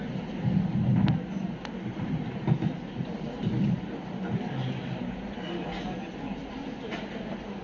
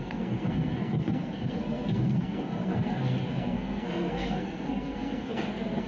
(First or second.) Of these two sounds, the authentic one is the first